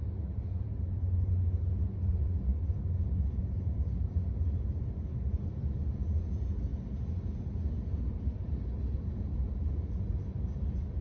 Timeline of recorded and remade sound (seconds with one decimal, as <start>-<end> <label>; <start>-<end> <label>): 0.0-11.0 recorded